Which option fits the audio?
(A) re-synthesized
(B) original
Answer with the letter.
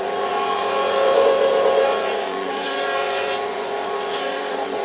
A